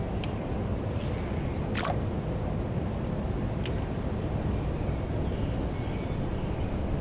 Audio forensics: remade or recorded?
recorded